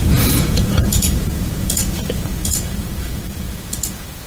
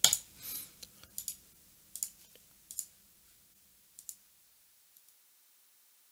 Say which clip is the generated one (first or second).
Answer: first